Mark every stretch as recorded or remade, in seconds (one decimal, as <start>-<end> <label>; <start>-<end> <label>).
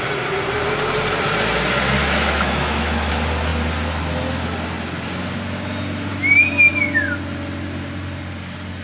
0.0-2.0 recorded; 2.0-3.1 remade; 3.1-8.8 recorded